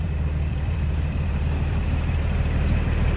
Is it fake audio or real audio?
fake